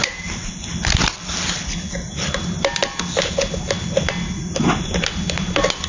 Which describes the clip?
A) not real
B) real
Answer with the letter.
B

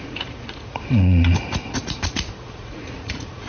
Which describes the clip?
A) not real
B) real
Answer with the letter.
A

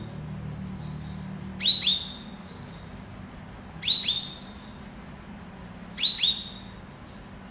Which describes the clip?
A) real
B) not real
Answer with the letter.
A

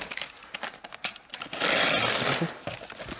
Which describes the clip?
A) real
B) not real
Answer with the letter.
A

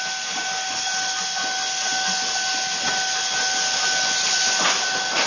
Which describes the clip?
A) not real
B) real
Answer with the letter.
B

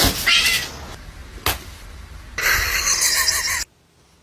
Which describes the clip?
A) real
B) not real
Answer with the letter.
A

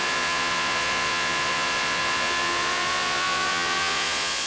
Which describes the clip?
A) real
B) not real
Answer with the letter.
B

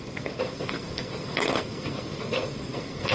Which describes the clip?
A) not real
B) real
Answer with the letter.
A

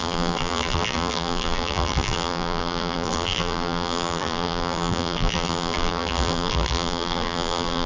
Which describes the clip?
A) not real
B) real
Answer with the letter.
A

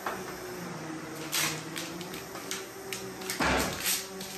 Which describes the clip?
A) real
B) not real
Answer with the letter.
A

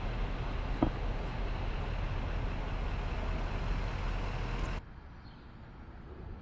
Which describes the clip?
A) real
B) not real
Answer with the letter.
A